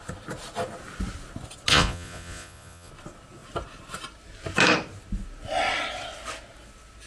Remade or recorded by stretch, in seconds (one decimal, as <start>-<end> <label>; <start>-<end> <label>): 0.0-1.7 recorded; 1.7-2.9 remade; 2.9-7.1 recorded